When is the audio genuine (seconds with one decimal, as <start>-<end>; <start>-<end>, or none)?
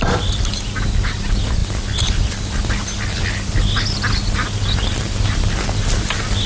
0.0-6.5